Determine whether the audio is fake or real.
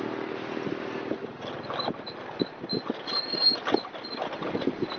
real